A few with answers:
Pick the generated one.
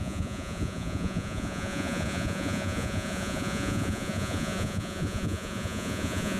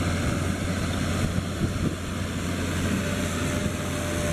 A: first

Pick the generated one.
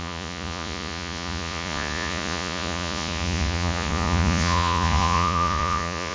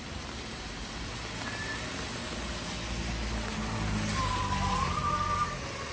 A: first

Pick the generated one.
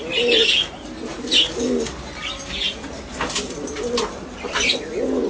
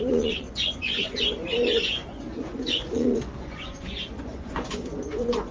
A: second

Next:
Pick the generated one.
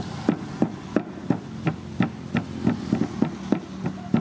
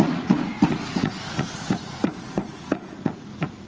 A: second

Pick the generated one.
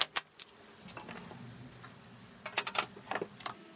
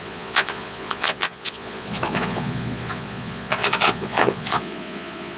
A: second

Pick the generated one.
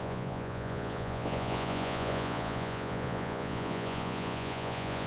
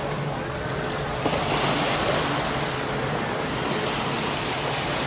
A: first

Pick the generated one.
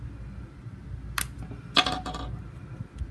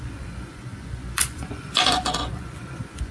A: second